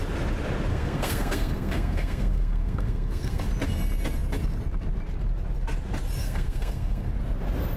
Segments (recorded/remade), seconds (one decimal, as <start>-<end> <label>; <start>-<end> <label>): 0.0-0.7 recorded; 0.7-3.5 remade; 3.5-6.2 recorded; 6.2-7.1 remade; 7.1-7.8 recorded